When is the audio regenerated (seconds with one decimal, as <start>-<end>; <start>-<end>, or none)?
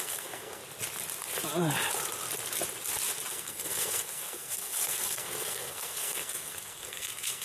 0.0-0.6; 3.3-7.4